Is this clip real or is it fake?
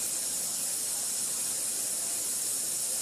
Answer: real